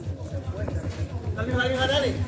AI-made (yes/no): no